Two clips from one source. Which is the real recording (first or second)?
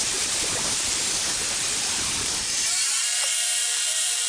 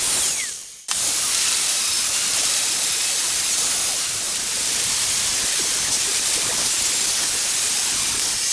second